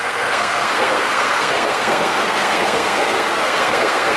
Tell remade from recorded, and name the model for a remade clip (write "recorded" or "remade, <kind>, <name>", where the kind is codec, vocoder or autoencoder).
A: remade, codec, SNAC